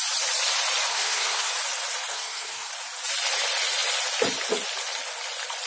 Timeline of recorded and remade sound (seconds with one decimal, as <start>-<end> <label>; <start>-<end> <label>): 0.0-0.9 recorded; 0.9-1.5 remade; 1.5-2.1 recorded; 2.1-2.7 remade; 2.7-5.7 recorded